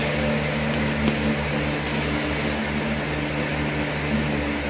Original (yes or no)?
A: yes